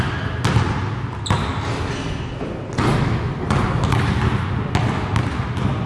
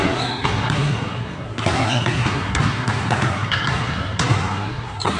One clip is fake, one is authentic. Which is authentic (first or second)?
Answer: first